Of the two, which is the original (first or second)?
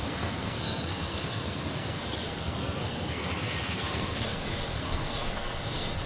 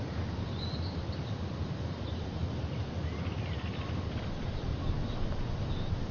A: second